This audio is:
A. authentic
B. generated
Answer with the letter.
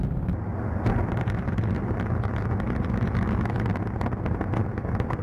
A